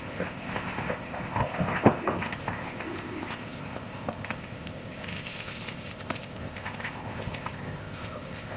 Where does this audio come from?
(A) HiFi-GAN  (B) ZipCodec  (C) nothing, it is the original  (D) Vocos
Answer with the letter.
B